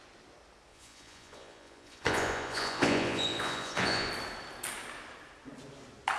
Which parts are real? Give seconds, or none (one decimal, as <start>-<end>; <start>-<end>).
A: 0.0-0.7; 4.1-6.2

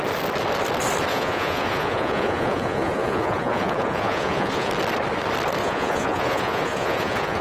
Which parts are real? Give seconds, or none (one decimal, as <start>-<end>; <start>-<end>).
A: 0.0-1.1; 4.7-5.6

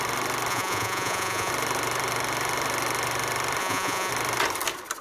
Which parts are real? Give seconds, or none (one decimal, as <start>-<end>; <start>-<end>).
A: 0.0-0.5; 1.5-3.6; 4.1-5.0

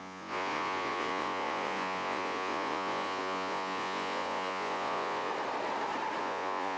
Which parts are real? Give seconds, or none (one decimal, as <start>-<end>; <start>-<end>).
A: 5.3-6.2

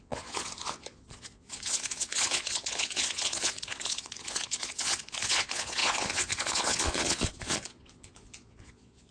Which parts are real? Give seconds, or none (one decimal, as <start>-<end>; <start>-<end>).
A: none

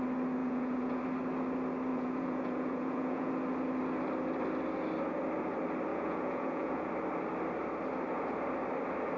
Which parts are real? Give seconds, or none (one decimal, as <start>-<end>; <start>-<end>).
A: 0.0-0.4; 1.0-1.9; 3.3-5.9; 6.9-9.2